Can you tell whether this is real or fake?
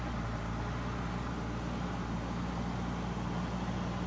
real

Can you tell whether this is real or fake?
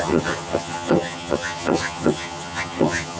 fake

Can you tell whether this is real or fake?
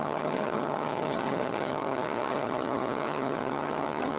fake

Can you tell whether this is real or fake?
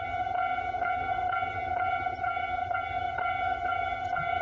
fake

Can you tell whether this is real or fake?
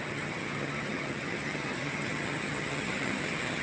fake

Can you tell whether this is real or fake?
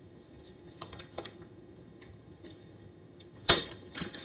fake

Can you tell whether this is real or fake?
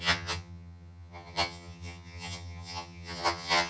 fake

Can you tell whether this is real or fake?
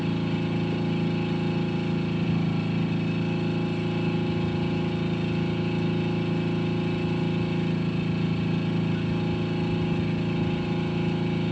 real